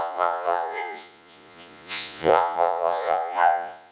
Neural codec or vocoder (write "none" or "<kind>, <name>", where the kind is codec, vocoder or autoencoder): vocoder, Vocos